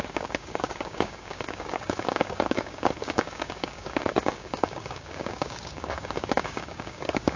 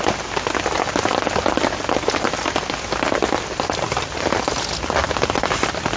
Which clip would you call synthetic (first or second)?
first